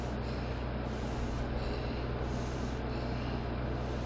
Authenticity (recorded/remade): recorded